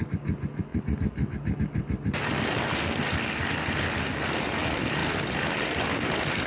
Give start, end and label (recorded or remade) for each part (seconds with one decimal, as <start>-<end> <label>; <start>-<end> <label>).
0.0-6.5 recorded